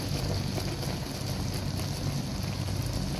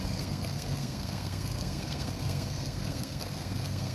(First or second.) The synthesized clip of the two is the second